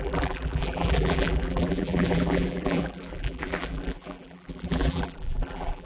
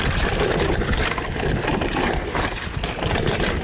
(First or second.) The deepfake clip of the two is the first